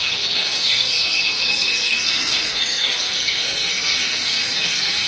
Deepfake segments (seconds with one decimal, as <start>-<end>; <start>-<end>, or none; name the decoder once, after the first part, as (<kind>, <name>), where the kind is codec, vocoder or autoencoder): 0.0-5.1 (codec, SNAC)